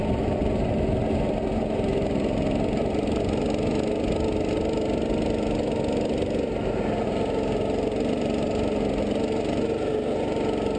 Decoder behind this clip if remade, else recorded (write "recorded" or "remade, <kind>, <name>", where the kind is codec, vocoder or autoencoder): recorded